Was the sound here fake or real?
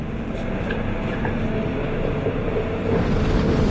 real